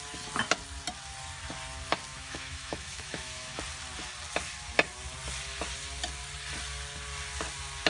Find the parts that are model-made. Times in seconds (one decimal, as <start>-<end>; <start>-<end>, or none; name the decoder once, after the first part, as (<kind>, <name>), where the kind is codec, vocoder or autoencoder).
2.1-3.6 (autoencoder, DAC-VAE)